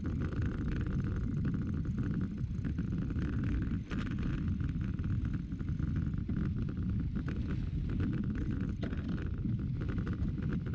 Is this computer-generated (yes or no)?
no